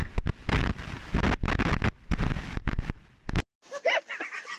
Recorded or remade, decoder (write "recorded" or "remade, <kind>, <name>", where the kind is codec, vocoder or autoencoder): recorded